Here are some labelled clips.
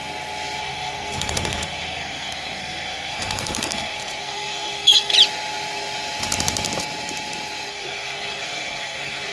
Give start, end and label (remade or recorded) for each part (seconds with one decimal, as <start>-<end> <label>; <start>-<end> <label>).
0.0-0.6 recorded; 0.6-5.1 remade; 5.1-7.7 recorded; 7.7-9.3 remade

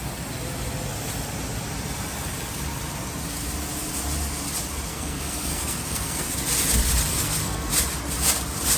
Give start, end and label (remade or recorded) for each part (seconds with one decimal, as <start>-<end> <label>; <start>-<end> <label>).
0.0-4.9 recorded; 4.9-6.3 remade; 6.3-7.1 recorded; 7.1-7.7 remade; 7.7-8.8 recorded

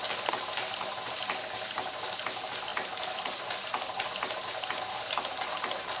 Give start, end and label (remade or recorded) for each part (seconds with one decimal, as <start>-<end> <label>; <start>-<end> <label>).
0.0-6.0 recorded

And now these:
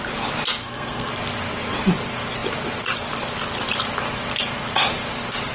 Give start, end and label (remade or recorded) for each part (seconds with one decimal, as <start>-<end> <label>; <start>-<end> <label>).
0.0-0.6 recorded; 0.6-1.1 remade; 1.1-5.5 recorded

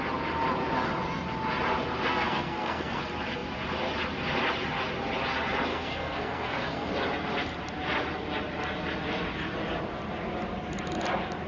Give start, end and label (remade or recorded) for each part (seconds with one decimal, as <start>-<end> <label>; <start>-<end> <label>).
0.0-2.1 recorded; 2.1-3.0 remade; 3.0-5.7 recorded; 5.7-6.9 remade; 6.9-11.5 recorded